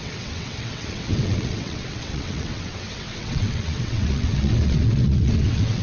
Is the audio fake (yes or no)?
yes